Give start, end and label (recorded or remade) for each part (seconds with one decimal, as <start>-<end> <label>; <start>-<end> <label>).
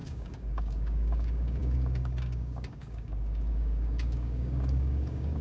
0.0-5.4 remade